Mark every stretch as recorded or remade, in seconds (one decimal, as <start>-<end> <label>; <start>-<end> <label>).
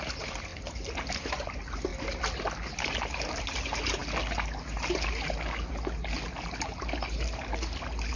0.0-8.2 recorded